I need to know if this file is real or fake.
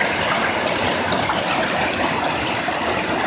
real